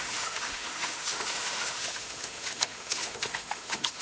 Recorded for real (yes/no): no